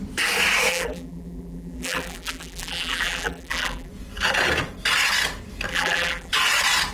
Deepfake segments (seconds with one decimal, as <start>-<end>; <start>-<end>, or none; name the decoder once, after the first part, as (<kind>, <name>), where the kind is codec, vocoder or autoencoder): 0.7-3.9 (vocoder, BigVGAN v2); 5.7-6.3